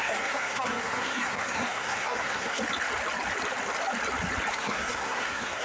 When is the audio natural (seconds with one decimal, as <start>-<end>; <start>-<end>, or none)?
2.6-4.5